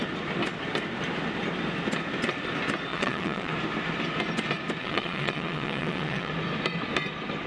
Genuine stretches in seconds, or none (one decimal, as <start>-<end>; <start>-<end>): 0.0-2.9; 3.5-4.8; 6.3-7.5